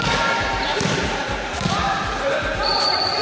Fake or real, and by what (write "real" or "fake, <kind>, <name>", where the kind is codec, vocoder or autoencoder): fake, vocoder, BigVGAN v2